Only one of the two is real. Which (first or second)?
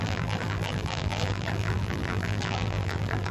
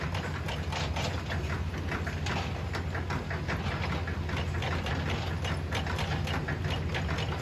second